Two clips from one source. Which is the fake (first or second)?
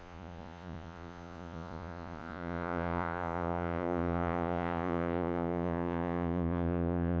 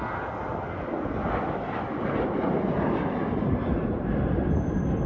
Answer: first